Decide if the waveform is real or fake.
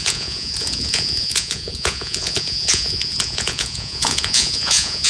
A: fake